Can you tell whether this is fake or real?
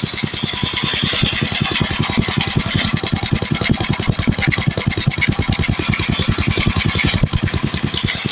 real